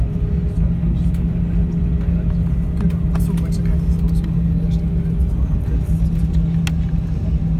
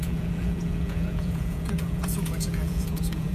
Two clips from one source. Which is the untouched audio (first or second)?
first